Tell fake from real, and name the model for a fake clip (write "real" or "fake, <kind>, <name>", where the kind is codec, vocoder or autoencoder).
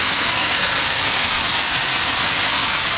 fake, codec, SNAC